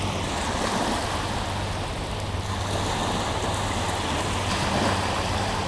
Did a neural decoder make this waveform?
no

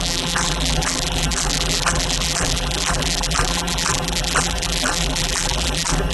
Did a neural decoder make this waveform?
yes